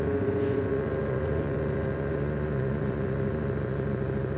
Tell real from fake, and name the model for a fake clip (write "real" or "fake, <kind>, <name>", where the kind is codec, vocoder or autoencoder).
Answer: fake, vocoder, Vocos